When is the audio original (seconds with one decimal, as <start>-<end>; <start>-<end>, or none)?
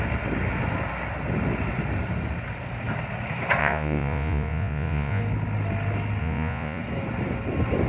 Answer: 0.0-3.6; 5.2-6.2; 6.8-7.9